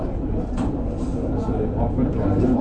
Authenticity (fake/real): fake